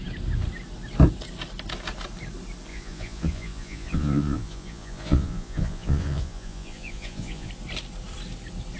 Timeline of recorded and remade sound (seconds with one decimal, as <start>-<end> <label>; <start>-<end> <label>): 0.0-2.7 recorded; 2.7-7.5 remade; 7.5-8.8 recorded

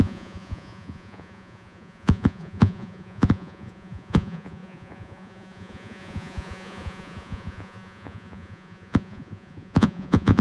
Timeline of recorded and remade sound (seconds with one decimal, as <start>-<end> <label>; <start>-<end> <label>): 0.0-10.4 remade

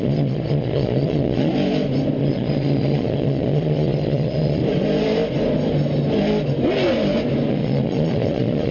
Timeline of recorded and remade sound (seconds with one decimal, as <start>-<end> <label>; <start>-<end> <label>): 0.0-1.5 remade; 1.5-2.2 recorded; 2.2-4.6 remade; 4.6-7.5 recorded; 7.5-8.7 remade

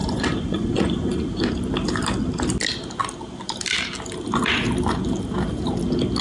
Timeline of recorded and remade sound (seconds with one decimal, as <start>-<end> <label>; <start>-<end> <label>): 0.0-1.3 remade; 1.3-6.2 recorded

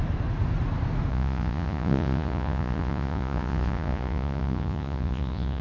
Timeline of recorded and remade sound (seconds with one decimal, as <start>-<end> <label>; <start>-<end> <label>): 0.0-1.1 recorded; 1.1-5.6 remade

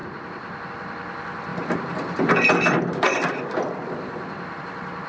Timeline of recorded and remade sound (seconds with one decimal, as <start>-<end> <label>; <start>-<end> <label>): 0.0-5.1 recorded

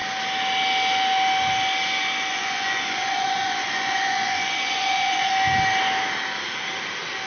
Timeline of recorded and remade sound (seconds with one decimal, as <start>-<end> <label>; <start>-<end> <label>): 0.0-2.3 recorded; 2.3-5.3 remade; 5.3-7.3 recorded

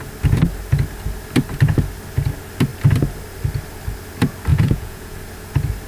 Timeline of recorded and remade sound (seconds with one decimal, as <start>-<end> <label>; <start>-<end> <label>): 0.0-4.5 recorded; 4.5-5.2 remade; 5.2-5.9 recorded